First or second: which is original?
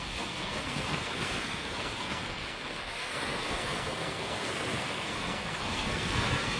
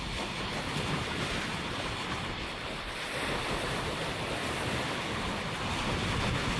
second